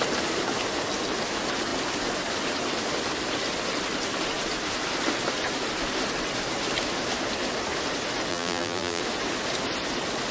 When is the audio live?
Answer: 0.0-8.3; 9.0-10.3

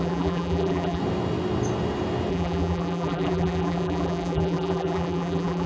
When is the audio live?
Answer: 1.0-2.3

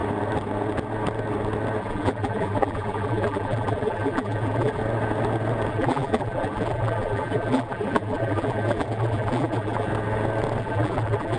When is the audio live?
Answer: 0.0-1.8; 4.8-5.7; 9.9-10.6

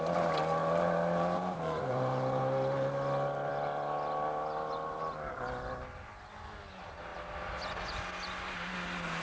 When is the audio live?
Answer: 0.0-0.6; 2.4-9.2

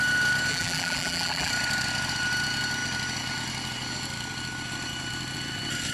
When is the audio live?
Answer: 0.0-0.5; 1.5-5.9